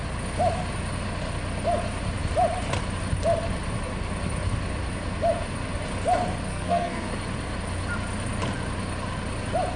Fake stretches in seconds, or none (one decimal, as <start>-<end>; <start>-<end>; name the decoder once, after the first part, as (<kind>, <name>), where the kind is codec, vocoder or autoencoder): 6.5-7.1 (codec, SNAC)